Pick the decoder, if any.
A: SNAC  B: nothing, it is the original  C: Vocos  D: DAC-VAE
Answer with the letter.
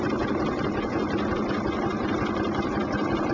B